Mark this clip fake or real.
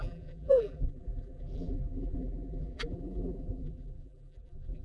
fake